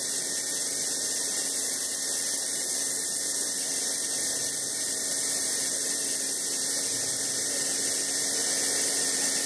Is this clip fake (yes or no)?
yes